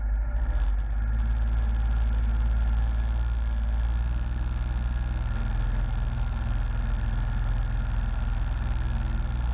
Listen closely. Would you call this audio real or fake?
real